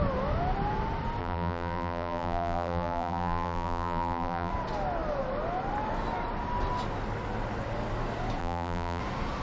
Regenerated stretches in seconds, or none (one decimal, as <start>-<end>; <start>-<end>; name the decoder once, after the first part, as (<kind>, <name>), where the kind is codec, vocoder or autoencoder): 1.2-4.5 (vocoder, BigVGAN v2); 8.4-9.0